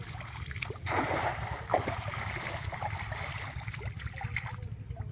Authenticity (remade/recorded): recorded